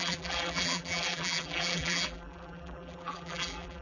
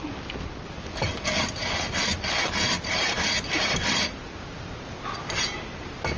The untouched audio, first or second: second